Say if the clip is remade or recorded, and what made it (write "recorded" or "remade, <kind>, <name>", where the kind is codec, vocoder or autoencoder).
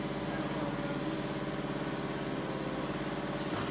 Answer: recorded